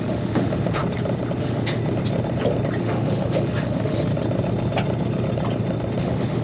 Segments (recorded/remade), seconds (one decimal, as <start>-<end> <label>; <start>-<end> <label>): 0.0-0.8 remade; 0.8-1.4 recorded; 1.4-1.8 remade; 1.8-2.8 recorded; 2.8-4.1 remade; 4.1-6.0 recorded; 6.0-6.4 remade